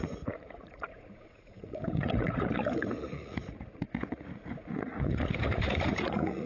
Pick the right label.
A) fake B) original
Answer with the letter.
A